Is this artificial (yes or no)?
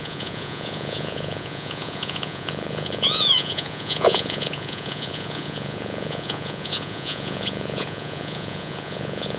yes